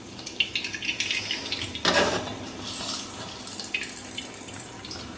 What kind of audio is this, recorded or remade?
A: recorded